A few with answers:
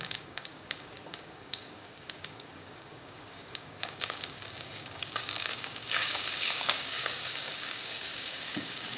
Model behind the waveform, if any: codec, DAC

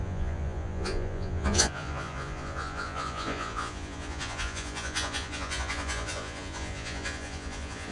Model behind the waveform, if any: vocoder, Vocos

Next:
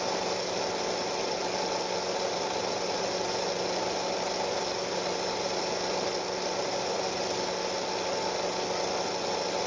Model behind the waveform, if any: none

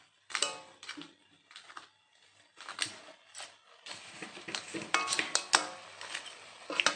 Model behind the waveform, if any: none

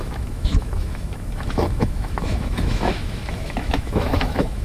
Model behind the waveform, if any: autoencoder, DAC-VAE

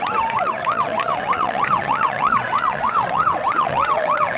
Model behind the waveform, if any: vocoder, WaveNeXt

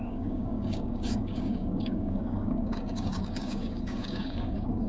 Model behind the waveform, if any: codec, DAC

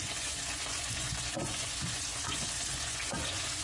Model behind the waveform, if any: vocoder, Vocos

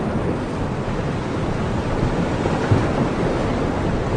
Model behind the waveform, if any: none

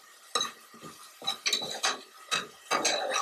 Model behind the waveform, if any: none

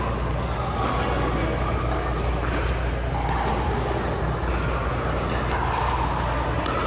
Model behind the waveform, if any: none